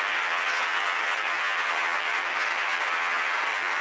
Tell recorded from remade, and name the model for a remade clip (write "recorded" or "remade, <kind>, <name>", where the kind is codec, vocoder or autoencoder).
remade, vocoder, HiFi-GAN